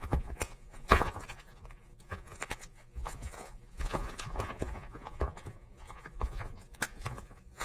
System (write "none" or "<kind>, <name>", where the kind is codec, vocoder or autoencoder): vocoder, Vocos